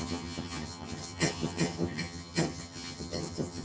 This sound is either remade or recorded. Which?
remade